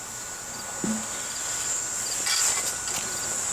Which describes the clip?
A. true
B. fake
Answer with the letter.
A